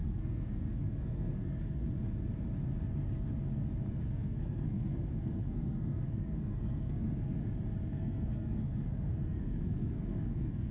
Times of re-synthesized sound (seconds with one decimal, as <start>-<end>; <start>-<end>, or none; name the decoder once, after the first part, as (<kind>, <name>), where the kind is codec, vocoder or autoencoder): 0.0-1.8 (codec, SNAC); 3.9-7.4; 7.9-10.7